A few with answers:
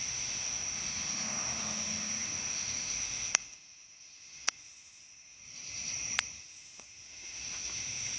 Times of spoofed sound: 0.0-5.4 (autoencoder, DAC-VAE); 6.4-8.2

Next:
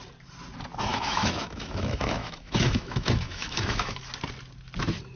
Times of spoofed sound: 0.9-4.0 (autoencoder, DAC-VAE)

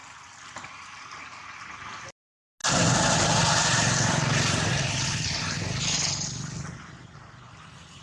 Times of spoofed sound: none

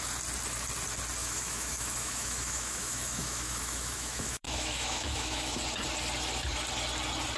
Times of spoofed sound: 1.2-5.6 (autoencoder, DAC-VAE)

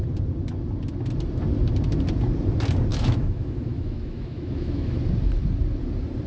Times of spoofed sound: 2.9-5.0 (autoencoder, DAC-VAE)

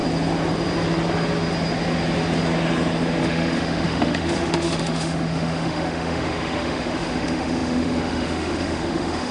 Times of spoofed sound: 3.2-9.3 (autoencoder, DAC-VAE)